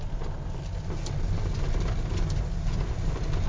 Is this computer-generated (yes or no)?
no